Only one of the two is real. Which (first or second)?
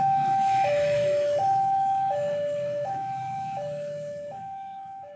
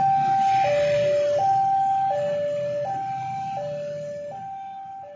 second